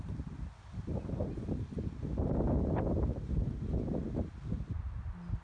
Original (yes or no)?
yes